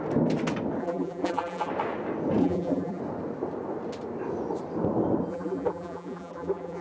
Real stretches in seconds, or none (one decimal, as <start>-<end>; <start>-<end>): 0.0-0.8; 1.7-2.4; 3.0-5.3